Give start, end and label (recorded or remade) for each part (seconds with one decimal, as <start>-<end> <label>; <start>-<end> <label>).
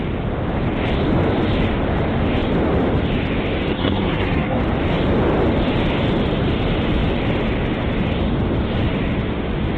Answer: 0.0-3.7 recorded; 3.7-4.6 remade; 4.6-9.8 recorded